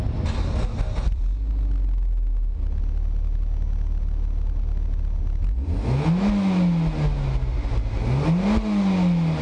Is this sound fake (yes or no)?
no